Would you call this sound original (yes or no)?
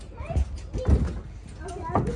yes